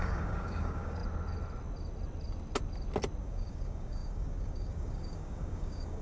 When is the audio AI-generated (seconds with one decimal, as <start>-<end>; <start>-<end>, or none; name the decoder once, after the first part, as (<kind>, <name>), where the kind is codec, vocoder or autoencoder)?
0.0-1.0 (codec, DAC); 3.2-6.0